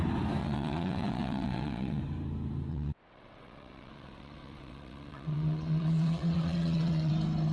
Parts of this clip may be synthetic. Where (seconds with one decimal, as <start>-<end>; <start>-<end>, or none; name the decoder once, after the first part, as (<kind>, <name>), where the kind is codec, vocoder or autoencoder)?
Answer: 0.4-2.0 (vocoder, WaveNeXt); 2.7-7.1